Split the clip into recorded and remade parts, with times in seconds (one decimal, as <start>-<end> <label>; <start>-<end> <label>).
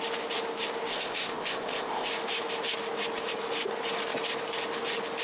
0.0-0.9 recorded; 0.9-2.1 remade; 2.1-5.2 recorded